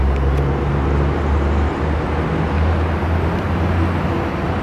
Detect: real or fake real